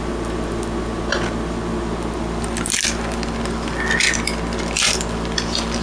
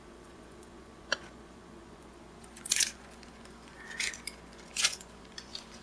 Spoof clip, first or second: second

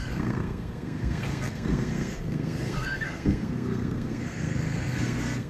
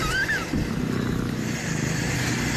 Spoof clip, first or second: first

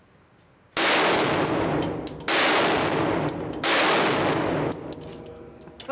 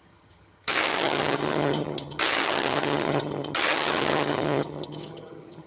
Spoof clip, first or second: second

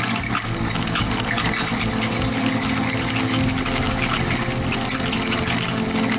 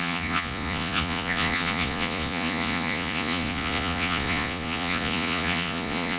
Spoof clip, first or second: second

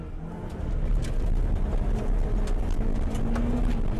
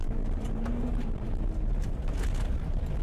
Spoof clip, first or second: second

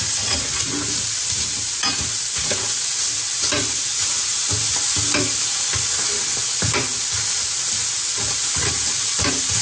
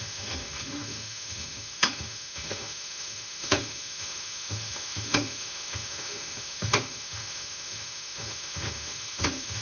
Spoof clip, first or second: second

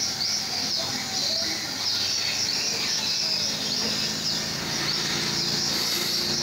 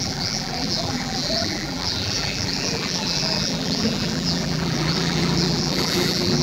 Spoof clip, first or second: second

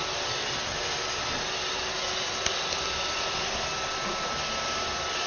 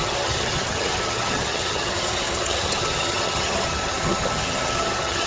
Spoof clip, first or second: second